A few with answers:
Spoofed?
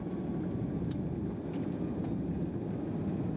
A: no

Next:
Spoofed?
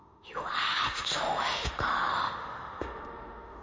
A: yes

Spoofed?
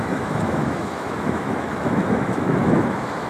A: yes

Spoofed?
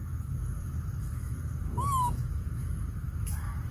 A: yes